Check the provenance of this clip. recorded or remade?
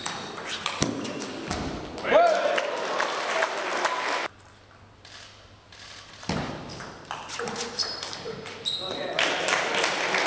recorded